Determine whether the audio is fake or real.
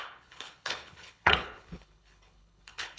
fake